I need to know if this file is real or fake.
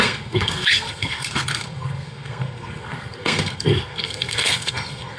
fake